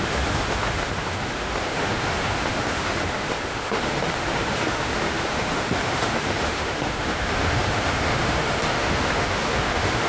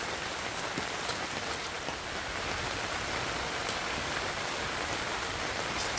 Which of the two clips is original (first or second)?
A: second